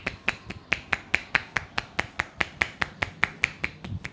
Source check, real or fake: real